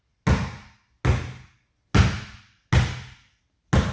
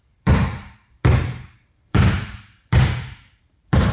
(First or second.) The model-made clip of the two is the second